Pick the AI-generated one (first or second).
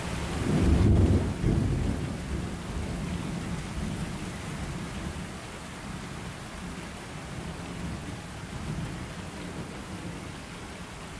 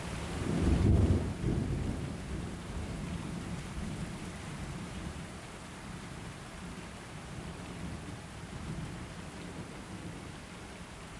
second